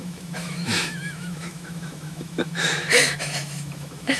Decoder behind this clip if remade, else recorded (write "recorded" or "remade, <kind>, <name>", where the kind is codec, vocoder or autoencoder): remade, autoencoder, DAC-VAE